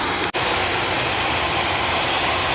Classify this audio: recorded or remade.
recorded